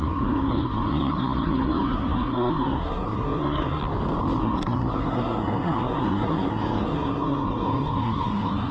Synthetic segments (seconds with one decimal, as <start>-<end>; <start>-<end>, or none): 0.0-3.8; 4.4-8.7